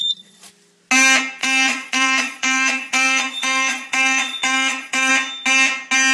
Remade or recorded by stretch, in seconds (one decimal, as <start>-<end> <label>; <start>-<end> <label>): 0.0-0.5 remade; 0.5-1.4 recorded; 1.4-5.1 remade; 5.1-6.1 recorded